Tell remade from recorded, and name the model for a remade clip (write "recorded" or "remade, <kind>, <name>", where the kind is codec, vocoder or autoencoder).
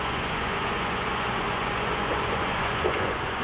remade, vocoder, Vocos